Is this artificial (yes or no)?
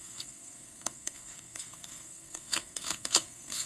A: yes